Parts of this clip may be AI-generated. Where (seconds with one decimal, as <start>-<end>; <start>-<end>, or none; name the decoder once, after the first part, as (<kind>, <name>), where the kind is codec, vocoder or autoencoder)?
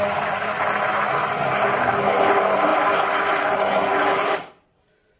none